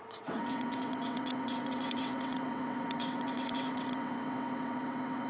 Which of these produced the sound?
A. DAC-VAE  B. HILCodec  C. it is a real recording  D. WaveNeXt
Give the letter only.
D